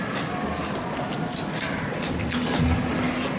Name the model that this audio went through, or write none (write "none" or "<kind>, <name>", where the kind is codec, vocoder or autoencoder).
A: none